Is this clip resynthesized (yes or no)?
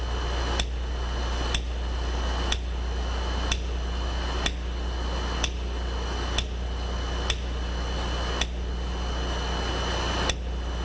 no